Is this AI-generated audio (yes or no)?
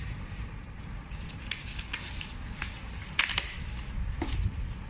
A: yes